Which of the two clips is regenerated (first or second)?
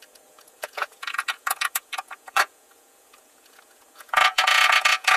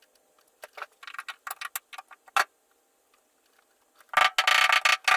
first